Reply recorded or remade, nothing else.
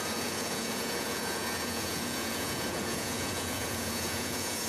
remade